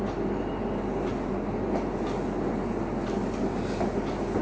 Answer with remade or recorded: recorded